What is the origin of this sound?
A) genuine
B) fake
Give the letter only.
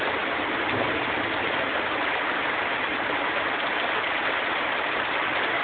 A